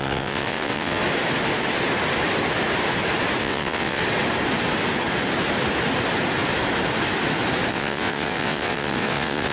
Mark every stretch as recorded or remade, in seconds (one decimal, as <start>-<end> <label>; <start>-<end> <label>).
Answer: 0.0-1.0 remade; 1.0-3.4 recorded; 3.4-4.0 remade; 4.0-7.7 recorded; 7.7-9.5 remade